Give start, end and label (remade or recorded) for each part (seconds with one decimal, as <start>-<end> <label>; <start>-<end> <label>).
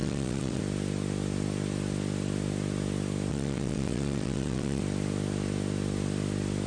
0.0-0.6 remade; 0.6-3.3 recorded; 3.3-4.8 remade; 4.8-6.7 recorded